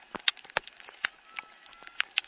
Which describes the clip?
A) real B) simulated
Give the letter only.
A